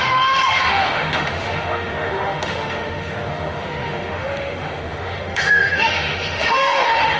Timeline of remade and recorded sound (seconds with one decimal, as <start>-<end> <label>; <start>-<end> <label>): 0.0-7.2 remade